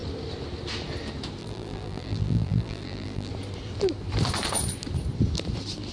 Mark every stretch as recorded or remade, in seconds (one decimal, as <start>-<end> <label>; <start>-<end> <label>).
0.0-1.4 recorded; 1.4-3.3 remade; 3.3-5.9 recorded